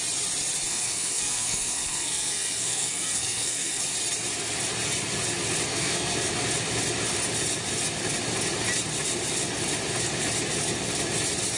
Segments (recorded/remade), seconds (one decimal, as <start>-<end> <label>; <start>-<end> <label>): 0.0-0.7 recorded; 0.7-3.8 remade; 3.8-5.7 recorded; 5.7-6.3 remade; 6.3-11.6 recorded